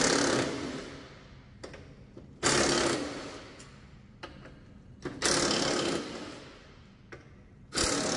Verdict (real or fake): real